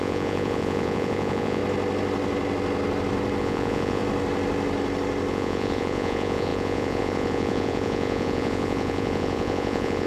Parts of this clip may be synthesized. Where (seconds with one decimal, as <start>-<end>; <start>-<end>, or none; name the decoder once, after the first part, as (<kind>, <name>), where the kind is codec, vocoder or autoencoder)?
0.0-1.6 (vocoder, Vocos); 3.4-4.0; 5.3-10.1